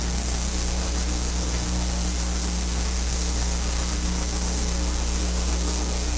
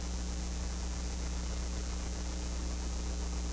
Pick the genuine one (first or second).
second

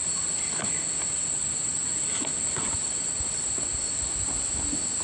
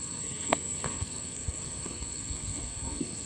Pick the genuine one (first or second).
first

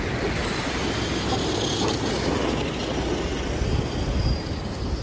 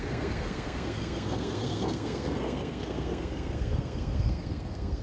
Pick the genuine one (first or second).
first